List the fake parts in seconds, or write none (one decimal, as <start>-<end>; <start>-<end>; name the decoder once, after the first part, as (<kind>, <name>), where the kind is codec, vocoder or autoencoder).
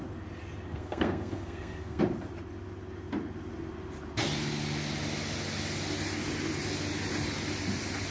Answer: 0.7-2.0 (codec, SNAC)